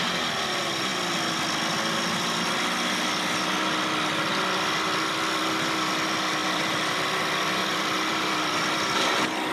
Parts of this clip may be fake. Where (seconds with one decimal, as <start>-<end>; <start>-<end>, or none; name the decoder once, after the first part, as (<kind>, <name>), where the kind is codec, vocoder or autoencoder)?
6.4-7.0 (vocoder, BigVGAN v2); 7.6-8.6